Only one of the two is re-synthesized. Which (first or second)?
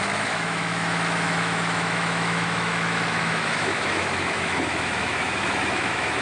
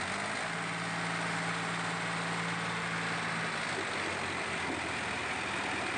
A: first